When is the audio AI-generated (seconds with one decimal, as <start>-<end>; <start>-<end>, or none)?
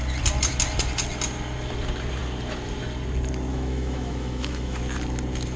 3.5-4.8